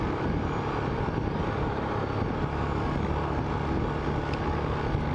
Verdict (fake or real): real